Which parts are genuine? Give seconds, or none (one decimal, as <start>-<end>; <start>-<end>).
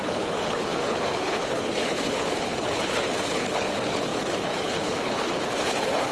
none